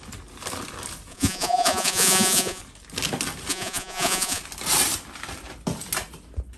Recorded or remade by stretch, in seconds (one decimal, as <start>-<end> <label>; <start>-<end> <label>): 0.0-1.1 recorded; 1.1-2.6 remade; 2.6-3.5 recorded; 3.5-4.4 remade; 4.4-6.6 recorded